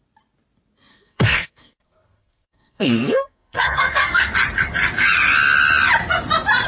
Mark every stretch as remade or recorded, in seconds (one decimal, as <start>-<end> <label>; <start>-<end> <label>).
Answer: 0.0-0.9 recorded; 0.9-4.3 remade; 4.3-6.7 recorded

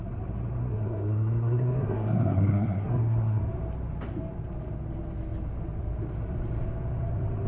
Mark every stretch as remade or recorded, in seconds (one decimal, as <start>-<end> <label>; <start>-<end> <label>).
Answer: 0.0-0.6 recorded; 0.6-3.4 remade; 3.4-7.5 recorded

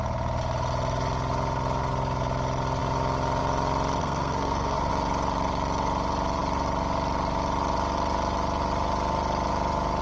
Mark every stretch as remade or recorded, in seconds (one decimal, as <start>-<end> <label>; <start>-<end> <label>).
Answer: 0.0-4.0 recorded; 4.0-4.9 remade; 4.9-10.0 recorded

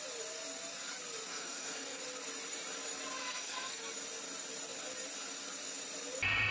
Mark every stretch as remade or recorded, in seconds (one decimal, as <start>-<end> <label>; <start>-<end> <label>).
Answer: 0.0-1.3 recorded; 1.3-2.0 remade; 2.0-3.2 recorded; 3.2-3.9 remade; 3.9-6.5 recorded

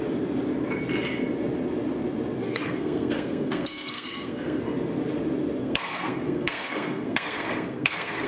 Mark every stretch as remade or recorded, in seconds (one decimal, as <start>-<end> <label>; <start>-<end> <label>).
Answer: 0.0-2.4 recorded; 2.4-4.6 remade; 4.6-5.6 recorded; 5.6-8.3 remade

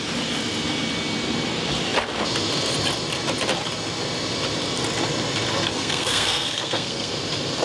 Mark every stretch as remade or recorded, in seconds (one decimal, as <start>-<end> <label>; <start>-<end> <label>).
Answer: 0.0-5.7 recorded; 5.7-7.1 remade; 7.1-7.6 recorded